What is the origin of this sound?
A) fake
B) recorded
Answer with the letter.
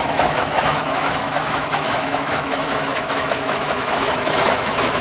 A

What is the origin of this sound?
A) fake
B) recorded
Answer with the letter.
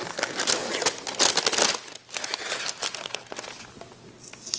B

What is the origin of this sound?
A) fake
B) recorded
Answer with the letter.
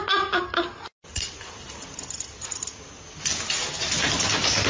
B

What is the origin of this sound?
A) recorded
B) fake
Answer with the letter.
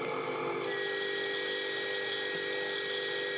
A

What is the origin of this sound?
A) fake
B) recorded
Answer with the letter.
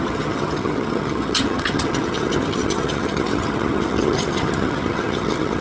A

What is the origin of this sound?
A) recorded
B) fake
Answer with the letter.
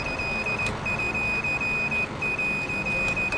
A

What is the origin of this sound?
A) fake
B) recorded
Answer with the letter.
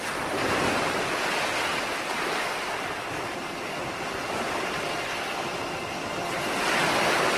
B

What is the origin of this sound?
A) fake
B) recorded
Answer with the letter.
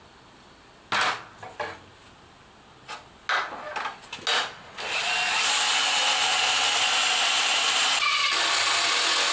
B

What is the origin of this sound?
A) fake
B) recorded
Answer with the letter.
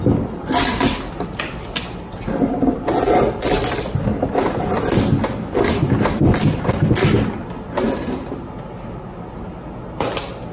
B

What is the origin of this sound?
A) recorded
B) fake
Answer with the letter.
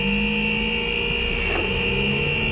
A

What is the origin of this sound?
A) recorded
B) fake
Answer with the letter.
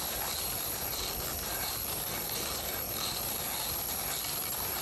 A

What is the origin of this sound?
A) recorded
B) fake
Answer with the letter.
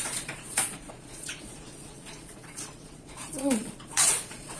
B